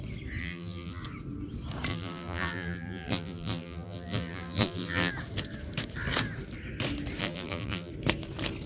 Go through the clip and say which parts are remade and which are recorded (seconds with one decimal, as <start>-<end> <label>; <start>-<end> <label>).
0.0-0.4 recorded; 0.4-1.0 remade; 1.0-1.9 recorded; 1.9-5.1 remade; 5.1-7.2 recorded; 7.2-7.9 remade; 7.9-8.7 recorded